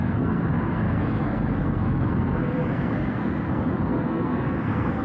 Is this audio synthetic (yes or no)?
yes